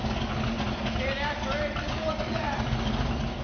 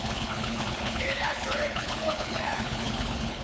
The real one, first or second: first